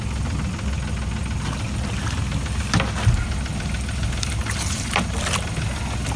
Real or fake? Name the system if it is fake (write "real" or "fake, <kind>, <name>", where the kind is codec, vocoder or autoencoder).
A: real